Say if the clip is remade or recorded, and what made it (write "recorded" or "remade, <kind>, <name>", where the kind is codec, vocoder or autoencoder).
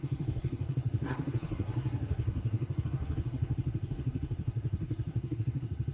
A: remade, codec, SNAC